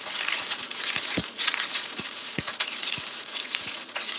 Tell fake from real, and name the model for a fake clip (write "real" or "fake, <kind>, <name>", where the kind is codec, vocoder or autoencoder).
fake, vocoder, Vocos